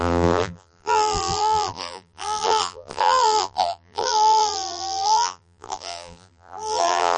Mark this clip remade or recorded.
remade